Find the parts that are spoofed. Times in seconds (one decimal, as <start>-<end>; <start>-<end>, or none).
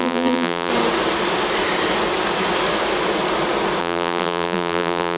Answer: 0.0-0.7; 3.8-5.2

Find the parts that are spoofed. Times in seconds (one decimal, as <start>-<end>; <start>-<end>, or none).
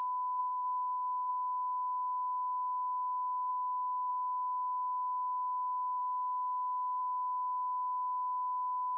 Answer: 0.4-1.3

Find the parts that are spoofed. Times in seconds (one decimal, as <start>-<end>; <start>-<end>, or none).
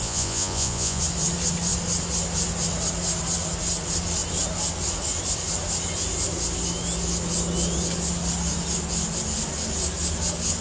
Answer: 0.0-1.0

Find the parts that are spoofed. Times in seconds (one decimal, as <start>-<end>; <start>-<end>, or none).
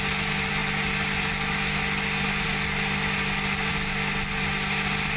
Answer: none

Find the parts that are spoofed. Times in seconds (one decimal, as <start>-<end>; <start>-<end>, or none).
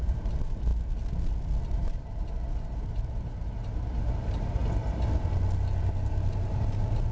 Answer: 0.0-0.7; 1.7-4.6; 6.5-7.1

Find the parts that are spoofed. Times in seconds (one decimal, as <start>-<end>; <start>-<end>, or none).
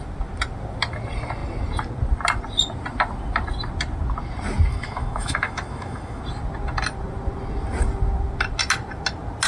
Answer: 4.7-6.2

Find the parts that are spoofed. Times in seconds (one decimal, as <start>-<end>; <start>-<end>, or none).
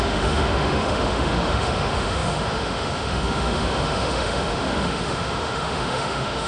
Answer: 0.0-6.5